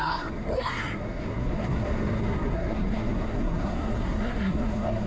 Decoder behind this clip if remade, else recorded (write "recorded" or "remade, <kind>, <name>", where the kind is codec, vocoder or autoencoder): remade, codec, SNAC